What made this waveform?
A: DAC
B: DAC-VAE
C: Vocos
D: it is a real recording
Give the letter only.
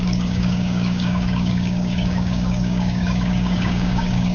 A